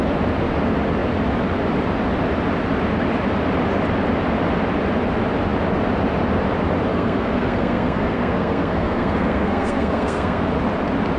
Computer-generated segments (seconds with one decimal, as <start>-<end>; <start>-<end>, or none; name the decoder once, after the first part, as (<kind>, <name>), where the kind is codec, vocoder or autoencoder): 6.9-10.4 (codec, SNAC)